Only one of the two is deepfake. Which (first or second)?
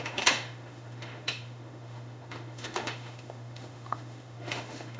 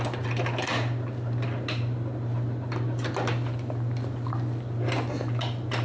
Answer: first